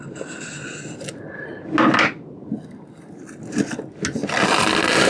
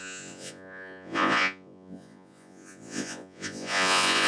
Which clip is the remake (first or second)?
second